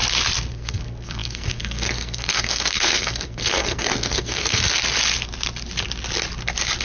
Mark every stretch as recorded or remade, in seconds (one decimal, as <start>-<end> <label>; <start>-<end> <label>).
0.0-0.5 recorded; 0.5-4.6 remade; 4.6-6.8 recorded

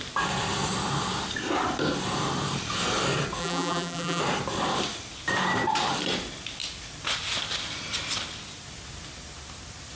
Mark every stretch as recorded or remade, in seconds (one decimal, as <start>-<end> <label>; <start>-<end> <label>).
0.0-3.4 recorded; 3.4-4.2 remade; 4.2-10.0 recorded

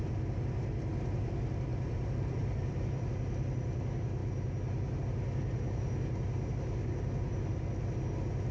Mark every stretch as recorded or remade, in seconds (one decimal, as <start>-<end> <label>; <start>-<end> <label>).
0.0-1.7 recorded; 1.7-3.1 remade; 3.1-8.5 recorded

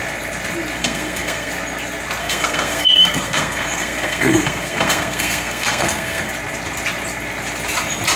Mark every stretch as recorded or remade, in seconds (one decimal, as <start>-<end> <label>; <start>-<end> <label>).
0.0-0.8 recorded; 0.8-1.5 remade; 1.5-2.2 recorded; 2.2-6.3 remade; 6.3-8.2 recorded